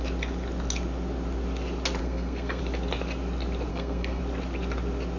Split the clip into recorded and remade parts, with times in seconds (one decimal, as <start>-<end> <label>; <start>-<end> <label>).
0.0-2.0 recorded; 2.0-2.6 remade; 2.6-3.7 recorded; 3.7-4.2 remade; 4.2-5.2 recorded